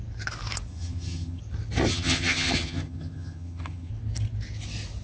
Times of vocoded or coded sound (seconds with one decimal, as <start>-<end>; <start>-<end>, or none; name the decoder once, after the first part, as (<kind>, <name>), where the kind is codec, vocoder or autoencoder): 0.7-1.4 (vocoder, HiFi-GAN); 1.9-3.9